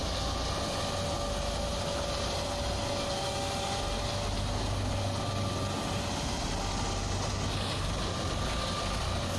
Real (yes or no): yes